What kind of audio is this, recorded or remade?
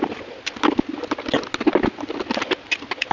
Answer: recorded